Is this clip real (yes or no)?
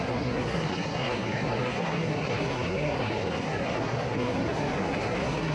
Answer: no